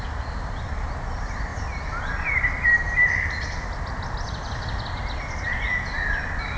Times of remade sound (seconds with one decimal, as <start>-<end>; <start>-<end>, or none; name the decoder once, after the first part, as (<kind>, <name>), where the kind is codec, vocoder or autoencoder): none